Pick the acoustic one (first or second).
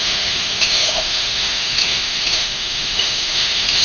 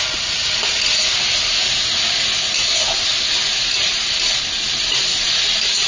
second